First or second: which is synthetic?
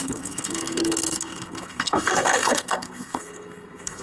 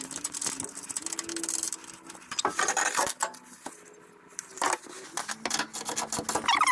first